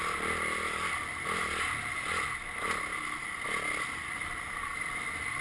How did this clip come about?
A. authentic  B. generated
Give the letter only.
A